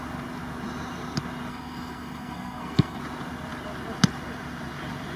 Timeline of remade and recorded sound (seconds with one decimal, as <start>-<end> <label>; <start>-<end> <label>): 0.0-1.5 recorded; 1.5-3.0 remade; 3.0-5.2 recorded